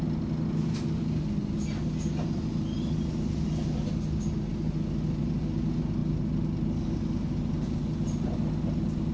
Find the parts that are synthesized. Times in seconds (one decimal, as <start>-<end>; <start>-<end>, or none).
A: none